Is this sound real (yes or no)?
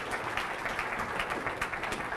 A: yes